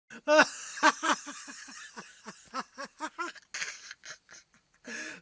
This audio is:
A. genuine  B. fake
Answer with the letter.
A